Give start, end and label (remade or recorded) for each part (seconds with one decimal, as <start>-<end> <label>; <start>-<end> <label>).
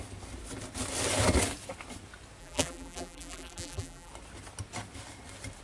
0.0-2.4 recorded; 2.4-4.1 remade; 4.1-5.6 recorded